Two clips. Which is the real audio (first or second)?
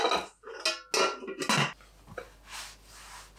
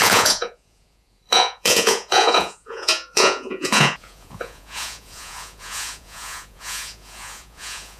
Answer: first